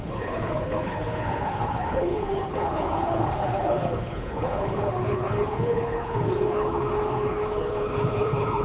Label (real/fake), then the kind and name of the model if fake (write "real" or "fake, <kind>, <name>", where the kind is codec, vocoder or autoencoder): fake, codec, HILCodec